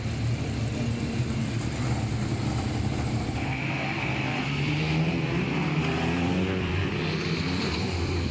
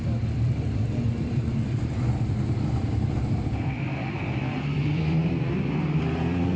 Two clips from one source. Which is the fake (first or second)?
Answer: second